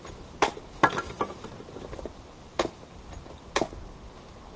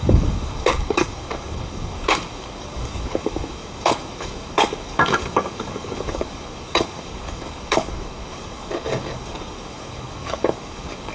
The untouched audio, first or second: first